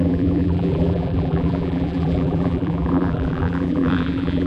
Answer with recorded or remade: remade